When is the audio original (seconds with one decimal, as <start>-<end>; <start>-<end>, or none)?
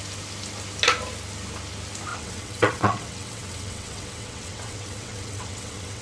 0.0-2.1